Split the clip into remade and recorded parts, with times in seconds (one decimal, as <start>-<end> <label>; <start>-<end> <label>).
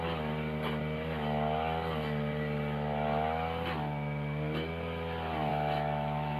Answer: 0.0-5.5 recorded; 5.5-6.4 remade